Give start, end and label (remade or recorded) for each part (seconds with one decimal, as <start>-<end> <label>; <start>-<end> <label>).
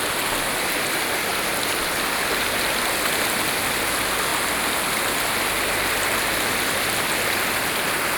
0.0-8.2 recorded